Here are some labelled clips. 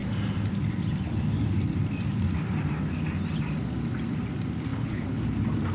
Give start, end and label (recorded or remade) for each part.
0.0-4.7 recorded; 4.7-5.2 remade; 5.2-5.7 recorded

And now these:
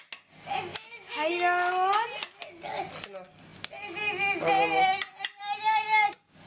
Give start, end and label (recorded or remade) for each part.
0.0-0.7 recorded; 0.7-1.3 remade; 1.3-6.5 recorded

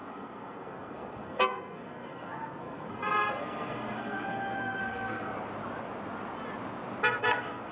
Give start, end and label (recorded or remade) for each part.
0.0-5.3 remade; 5.3-7.2 recorded; 7.2-7.7 remade